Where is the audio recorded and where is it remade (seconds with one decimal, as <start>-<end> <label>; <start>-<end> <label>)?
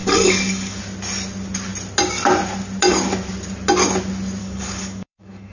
0.0-0.8 remade; 0.8-4.4 recorded; 4.4-5.5 remade